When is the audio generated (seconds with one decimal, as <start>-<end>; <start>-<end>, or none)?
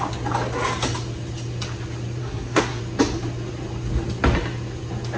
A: 2.2-2.8